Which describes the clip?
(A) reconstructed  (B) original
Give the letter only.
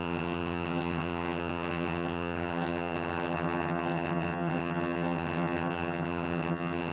A